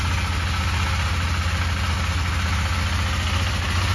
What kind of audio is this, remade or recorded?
recorded